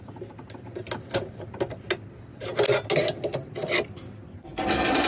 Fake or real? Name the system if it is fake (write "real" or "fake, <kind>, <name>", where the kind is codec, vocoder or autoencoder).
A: real